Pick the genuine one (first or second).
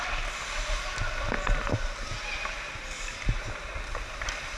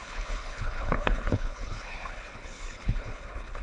first